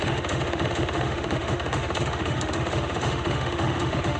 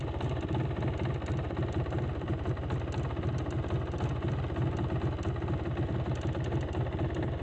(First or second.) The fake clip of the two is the first